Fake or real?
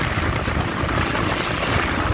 real